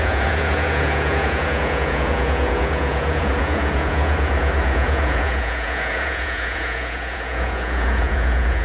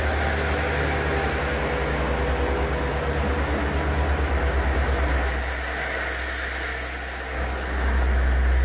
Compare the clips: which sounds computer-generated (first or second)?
first